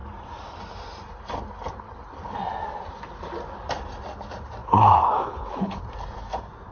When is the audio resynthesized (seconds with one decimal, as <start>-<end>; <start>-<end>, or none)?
4.6-5.8